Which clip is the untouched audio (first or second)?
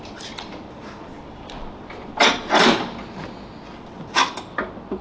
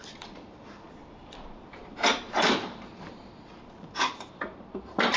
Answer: first